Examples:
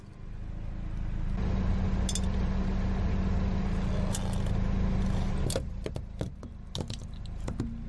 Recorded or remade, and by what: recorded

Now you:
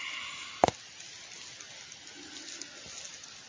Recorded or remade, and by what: recorded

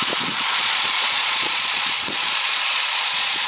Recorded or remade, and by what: remade, vocoder, Vocos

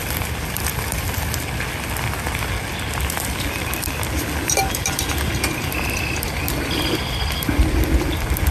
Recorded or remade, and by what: recorded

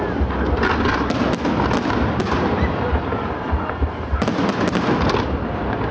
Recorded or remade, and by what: recorded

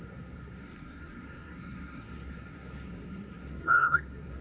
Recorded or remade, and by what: remade, codec, SNAC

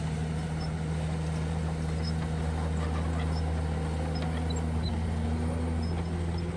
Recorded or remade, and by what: recorded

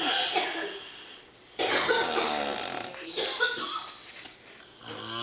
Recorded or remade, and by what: recorded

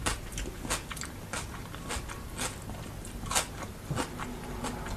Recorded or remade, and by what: recorded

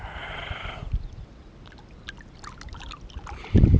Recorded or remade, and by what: recorded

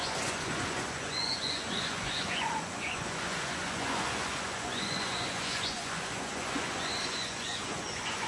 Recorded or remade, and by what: remade, vocoder, Vocos